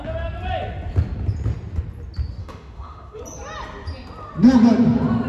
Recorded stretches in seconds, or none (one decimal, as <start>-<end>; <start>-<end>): 0.0-2.4; 3.2-5.3